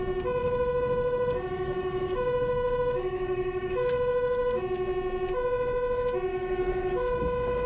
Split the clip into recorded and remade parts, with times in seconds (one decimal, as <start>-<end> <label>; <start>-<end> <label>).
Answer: 0.0-0.4 recorded; 0.4-4.6 remade; 4.6-6.3 recorded; 6.3-7.2 remade; 7.2-7.7 recorded